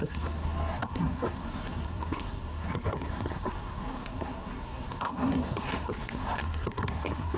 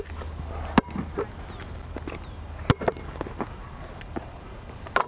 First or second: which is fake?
first